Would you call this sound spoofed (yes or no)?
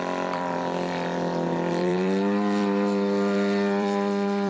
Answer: yes